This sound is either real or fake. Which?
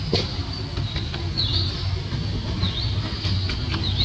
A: real